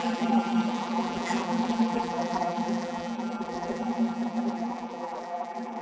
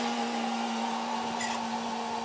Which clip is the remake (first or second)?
first